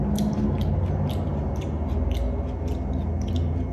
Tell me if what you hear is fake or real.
real